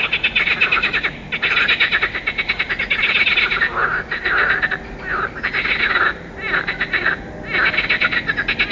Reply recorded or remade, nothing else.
recorded